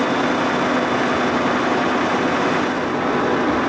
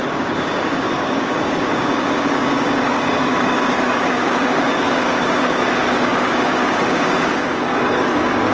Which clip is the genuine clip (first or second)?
first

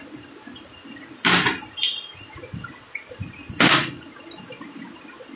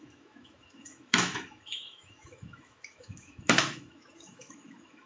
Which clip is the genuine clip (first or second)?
first